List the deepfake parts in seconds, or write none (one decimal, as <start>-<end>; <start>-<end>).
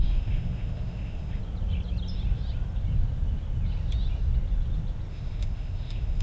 0.0-1.4; 5.1-6.2